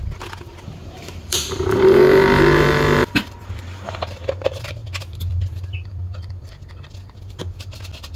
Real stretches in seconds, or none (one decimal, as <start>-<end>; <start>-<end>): 0.0-0.8; 3.5-8.2